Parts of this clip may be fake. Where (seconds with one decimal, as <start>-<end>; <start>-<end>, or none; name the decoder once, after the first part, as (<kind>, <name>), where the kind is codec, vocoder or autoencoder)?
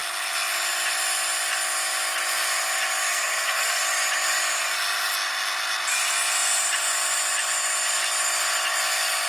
3.1-3.8 (codec, SNAC)